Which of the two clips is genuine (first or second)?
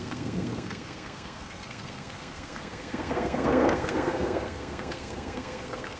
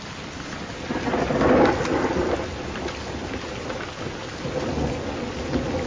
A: second